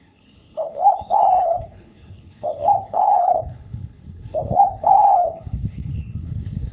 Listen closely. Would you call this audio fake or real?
fake